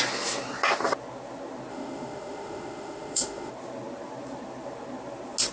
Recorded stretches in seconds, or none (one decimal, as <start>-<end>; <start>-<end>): 0.0-1.7; 3.5-5.5